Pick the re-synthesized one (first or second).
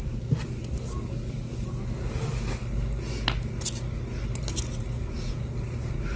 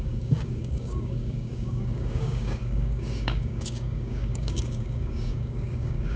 second